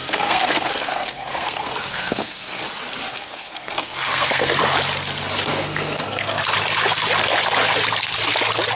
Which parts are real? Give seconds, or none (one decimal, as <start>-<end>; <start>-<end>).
2.6-3.1; 4.5-5.5; 6.4-8.8